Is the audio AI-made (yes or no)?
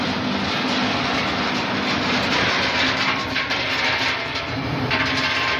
no